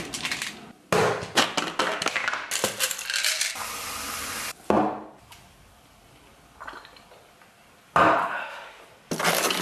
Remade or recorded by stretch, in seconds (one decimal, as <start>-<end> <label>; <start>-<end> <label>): 0.0-8.2 recorded; 8.2-8.8 remade; 8.8-9.6 recorded